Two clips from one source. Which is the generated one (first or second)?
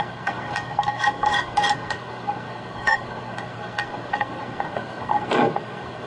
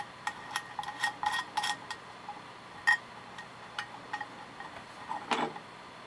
first